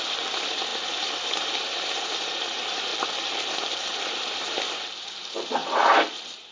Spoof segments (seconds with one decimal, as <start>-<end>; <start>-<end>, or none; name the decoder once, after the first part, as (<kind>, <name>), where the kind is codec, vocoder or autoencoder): 0.0-2.9 (vocoder, BigVGAN v2); 3.5-6.5